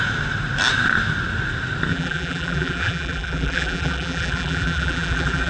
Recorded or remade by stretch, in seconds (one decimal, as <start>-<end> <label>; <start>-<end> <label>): 0.0-1.9 recorded; 1.9-5.5 remade